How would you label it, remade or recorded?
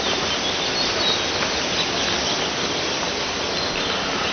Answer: recorded